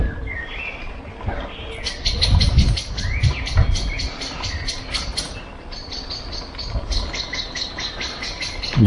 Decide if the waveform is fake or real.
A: real